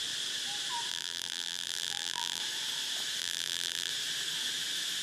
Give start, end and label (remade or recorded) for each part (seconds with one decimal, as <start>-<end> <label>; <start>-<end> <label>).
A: 0.0-0.9 recorded; 0.9-2.4 remade; 2.4-3.2 recorded; 3.2-3.9 remade; 3.9-5.0 recorded